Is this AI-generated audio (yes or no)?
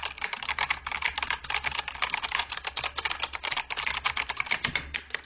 no